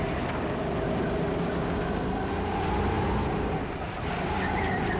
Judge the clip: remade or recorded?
recorded